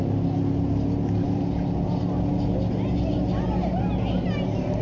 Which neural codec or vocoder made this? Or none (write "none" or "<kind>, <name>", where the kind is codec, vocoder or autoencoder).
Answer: none